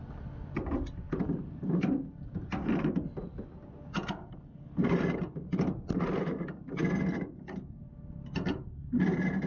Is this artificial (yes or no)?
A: no